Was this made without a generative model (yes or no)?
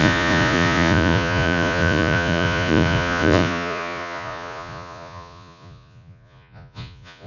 no